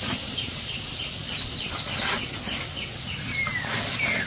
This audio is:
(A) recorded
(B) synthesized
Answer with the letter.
A